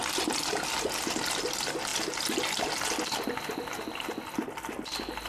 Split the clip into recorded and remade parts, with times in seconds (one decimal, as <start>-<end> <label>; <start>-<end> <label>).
0.0-5.3 recorded